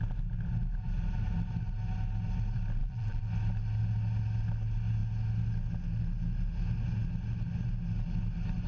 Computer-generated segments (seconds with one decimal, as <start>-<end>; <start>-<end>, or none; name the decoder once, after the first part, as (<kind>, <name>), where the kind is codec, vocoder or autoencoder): 2.8-3.3 (vocoder, BigVGAN v2)